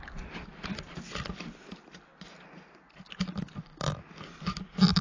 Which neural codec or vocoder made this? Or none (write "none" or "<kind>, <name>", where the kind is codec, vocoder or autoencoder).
none